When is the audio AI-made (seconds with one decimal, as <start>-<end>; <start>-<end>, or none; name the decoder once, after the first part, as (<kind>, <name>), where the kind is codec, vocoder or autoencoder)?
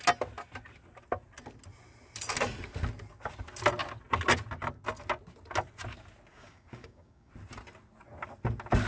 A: 6.3-7.3 (codec, DAC)